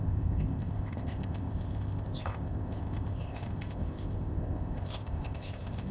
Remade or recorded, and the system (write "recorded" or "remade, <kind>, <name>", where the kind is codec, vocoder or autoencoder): remade, codec, ZipCodec